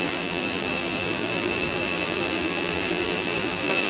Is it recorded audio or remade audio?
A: remade